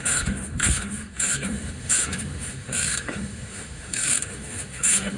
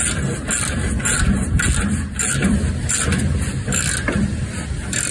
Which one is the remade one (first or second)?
first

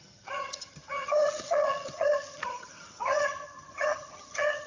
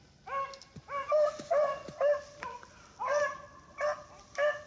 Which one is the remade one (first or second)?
first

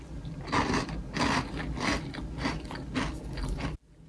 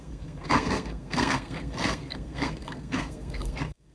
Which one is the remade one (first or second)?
second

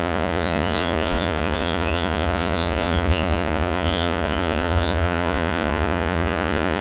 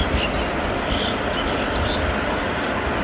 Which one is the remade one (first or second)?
first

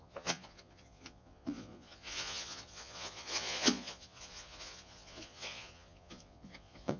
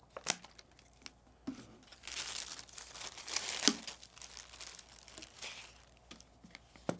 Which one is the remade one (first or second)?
first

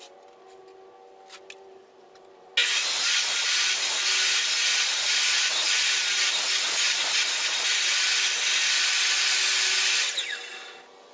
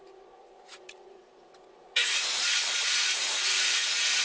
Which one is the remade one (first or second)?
second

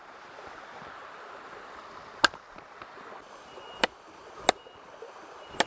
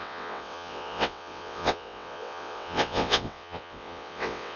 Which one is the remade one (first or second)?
second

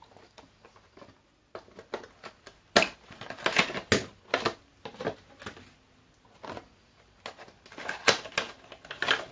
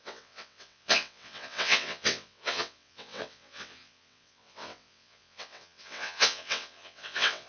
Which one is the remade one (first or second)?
second